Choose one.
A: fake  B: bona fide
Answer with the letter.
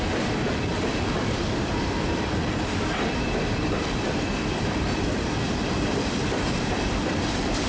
A